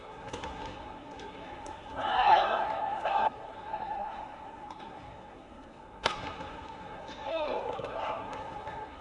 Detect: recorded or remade remade